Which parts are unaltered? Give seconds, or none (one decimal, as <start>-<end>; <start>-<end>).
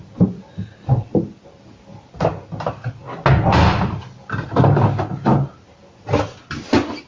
0.0-7.1